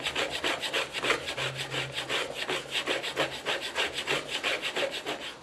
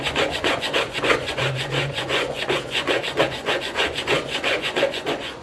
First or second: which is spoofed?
second